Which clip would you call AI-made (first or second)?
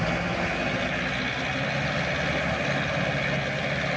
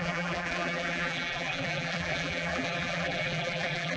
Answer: second